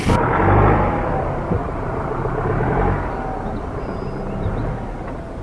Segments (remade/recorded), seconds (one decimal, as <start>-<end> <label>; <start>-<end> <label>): 0.0-1.6 recorded; 1.6-3.1 remade; 3.1-5.4 recorded